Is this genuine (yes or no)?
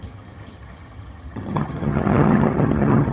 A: no